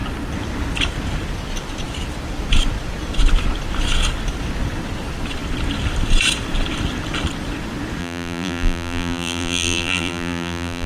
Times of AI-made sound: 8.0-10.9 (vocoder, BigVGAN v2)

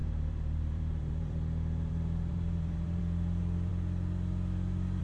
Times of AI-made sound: 0.0-3.0 (vocoder, BigVGAN v2)

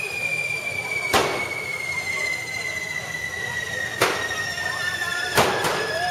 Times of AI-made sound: 1.2-1.8 (vocoder, BigVGAN v2); 2.7-4.4; 5.1-6.1

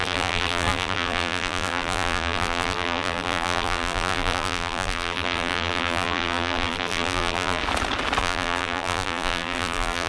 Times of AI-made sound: 0.0-7.6 (vocoder, BigVGAN v2); 8.2-10.1

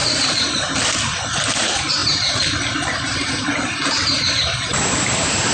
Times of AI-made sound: 0.6-5.5 (vocoder, BigVGAN v2)

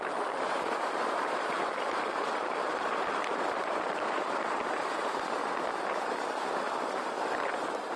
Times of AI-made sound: 0.0-5.4 (vocoder, BigVGAN v2)

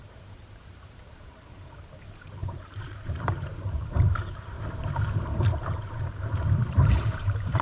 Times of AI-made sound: 0.0-7.6 (vocoder, BigVGAN v2)

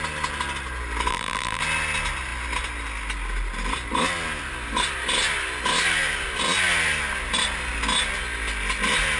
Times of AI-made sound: 1.1-1.6 (vocoder, BigVGAN v2)